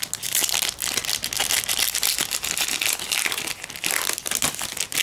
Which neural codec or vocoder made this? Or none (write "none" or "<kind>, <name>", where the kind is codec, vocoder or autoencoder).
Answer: none